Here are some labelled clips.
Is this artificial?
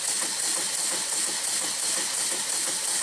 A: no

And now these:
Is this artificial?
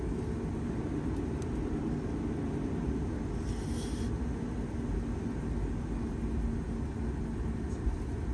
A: no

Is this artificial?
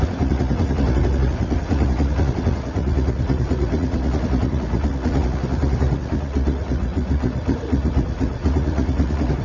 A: yes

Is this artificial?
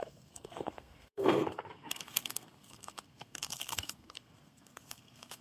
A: yes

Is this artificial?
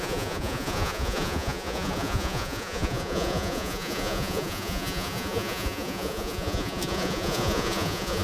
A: yes